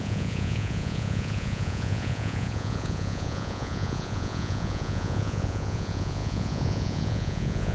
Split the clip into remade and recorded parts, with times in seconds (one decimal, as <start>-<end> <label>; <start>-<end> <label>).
0.0-7.7 remade